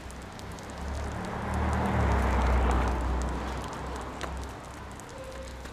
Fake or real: real